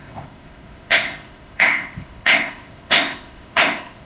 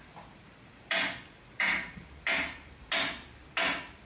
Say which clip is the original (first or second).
second